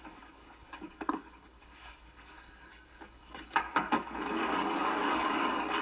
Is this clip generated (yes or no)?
yes